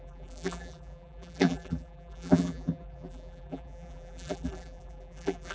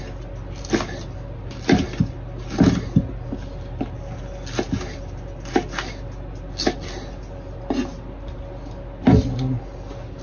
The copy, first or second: first